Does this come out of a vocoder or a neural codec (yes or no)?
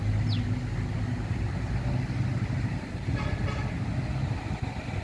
no